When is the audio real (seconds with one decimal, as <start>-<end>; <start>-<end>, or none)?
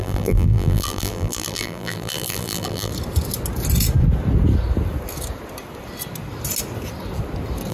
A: 2.9-7.7